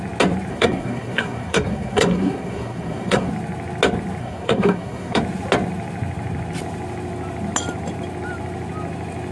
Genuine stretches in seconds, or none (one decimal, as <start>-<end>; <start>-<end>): 0.0-0.5; 3.3-4.2; 5.2-9.3